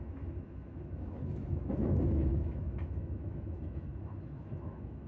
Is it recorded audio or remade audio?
remade